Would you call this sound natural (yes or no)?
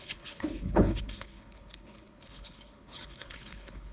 no